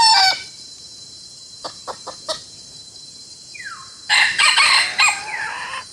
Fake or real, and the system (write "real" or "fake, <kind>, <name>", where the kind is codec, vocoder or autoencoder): fake, vocoder, BigVGAN v2